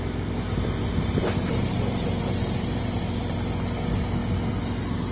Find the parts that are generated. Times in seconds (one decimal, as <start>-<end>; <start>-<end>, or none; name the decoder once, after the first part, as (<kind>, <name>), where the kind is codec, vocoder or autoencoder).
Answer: 0.9-3.0 (vocoder, BigVGAN v2)

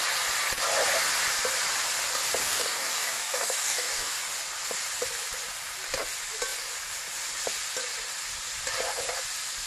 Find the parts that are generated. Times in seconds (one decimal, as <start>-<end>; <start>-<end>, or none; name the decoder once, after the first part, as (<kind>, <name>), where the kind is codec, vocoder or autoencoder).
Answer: 2.4-4.1 (codec, DAC)

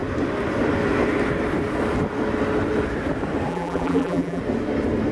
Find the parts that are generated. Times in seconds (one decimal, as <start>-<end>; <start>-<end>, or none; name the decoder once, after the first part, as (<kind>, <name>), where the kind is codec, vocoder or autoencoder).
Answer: 3.5-4.4 (vocoder, BigVGAN v2)

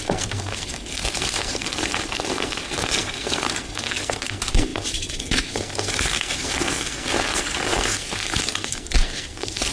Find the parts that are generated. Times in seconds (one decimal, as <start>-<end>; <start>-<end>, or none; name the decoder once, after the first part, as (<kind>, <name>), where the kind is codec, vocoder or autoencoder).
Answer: 0.0-9.7 (codec, SNAC)

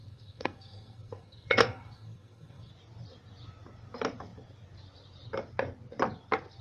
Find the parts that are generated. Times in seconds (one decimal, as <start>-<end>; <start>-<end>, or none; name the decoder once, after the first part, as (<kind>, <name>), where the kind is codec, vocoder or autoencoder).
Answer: 0.0-2.7 (codec, SNAC)

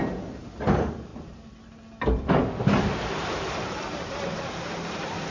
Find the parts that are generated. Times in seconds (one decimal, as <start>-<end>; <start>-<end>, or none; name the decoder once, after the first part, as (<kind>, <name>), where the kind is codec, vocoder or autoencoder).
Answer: 1.1-1.8 (vocoder, BigVGAN v2); 3.2-5.3

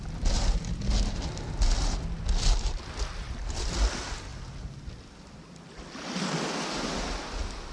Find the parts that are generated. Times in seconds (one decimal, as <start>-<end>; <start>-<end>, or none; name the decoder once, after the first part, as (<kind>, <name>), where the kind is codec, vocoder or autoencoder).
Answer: 4.3-6.4 (vocoder, BigVGAN v2)